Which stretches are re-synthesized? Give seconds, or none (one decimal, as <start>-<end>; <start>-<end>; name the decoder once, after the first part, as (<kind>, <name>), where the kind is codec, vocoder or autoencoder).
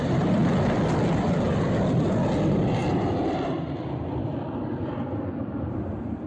0.0-0.4 (vocoder, BigVGAN v2); 1.5-6.3